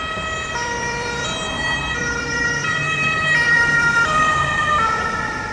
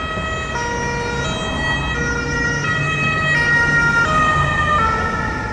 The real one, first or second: second